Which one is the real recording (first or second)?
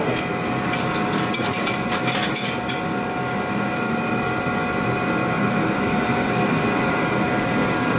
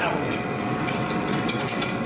first